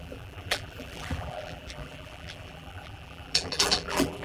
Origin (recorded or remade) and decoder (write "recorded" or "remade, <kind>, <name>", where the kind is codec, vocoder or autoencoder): remade, vocoder, BigVGAN v2